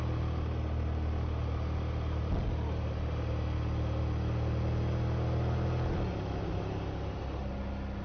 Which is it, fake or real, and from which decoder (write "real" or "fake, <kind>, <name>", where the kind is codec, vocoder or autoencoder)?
real